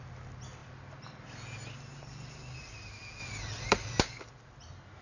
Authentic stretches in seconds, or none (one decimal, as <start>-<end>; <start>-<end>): 0.0-3.2; 4.0-5.0